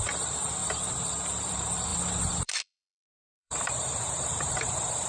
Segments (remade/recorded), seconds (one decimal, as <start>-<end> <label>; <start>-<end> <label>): 0.0-0.6 remade; 0.6-1.5 recorded; 1.5-1.9 remade; 1.9-2.4 recorded; 2.4-5.1 remade